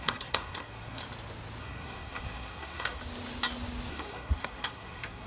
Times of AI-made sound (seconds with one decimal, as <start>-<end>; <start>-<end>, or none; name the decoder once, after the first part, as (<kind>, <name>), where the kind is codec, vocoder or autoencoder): 0.0-1.0 (codec, SNAC); 1.6-3.0; 3.9-5.3